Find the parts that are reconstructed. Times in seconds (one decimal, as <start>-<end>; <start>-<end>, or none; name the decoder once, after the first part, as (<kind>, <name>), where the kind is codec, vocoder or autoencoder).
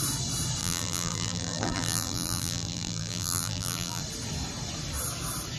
0.6-4.0 (vocoder, BigVGAN v2)